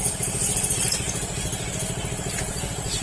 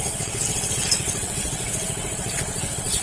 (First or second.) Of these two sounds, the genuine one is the first